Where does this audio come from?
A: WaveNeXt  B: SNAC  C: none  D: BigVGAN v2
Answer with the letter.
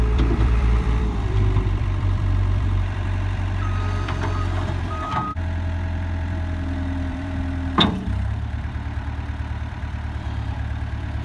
D